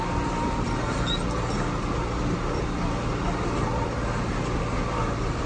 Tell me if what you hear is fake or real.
real